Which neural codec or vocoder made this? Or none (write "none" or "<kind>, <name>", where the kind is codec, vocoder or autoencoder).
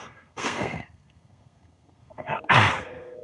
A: codec, SNAC